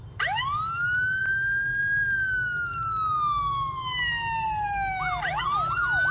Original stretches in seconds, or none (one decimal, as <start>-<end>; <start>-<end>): 0.0-6.1